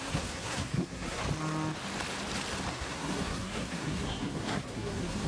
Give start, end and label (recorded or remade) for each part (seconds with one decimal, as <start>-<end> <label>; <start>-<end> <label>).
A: 0.0-1.2 remade; 1.2-2.7 recorded; 2.7-5.3 remade